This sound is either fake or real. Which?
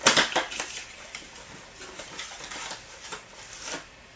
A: real